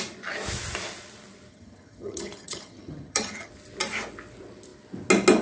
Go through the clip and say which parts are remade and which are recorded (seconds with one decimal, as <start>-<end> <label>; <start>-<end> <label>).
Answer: 0.0-1.5 recorded; 1.5-3.5 remade; 3.5-5.4 recorded